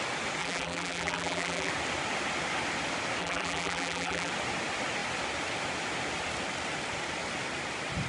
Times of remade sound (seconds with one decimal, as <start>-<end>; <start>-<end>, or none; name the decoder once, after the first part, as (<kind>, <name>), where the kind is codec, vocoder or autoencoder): 0.4-1.7 (vocoder, BigVGAN v2); 3.2-4.3